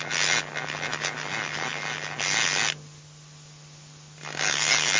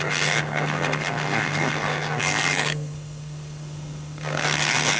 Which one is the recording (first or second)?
first